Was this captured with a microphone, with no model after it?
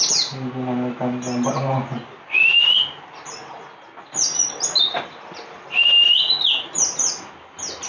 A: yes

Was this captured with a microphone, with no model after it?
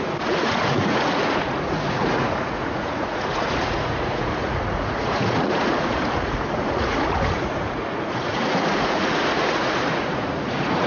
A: no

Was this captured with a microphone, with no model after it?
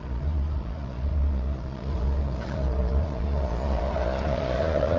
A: no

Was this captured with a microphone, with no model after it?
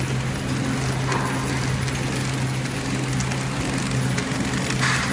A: yes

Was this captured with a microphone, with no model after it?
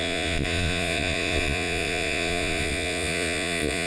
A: no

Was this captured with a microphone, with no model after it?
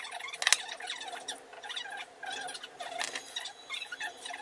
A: yes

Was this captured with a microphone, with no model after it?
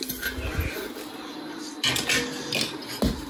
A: yes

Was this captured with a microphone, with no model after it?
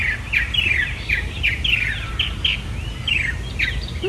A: yes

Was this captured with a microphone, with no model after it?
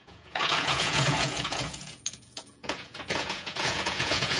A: no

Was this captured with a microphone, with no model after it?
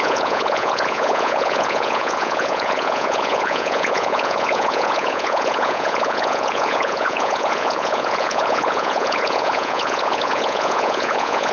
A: no